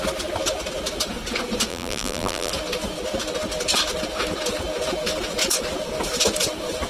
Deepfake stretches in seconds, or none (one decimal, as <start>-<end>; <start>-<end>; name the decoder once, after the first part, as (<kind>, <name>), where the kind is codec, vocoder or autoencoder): 1.7-2.5 (vocoder, BigVGAN v2)